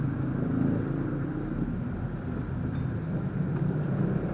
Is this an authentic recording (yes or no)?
yes